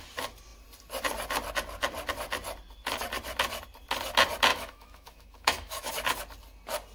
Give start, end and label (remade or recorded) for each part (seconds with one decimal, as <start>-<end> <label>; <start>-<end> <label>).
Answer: 0.0-4.5 recorded; 4.5-5.9 remade; 5.9-6.9 recorded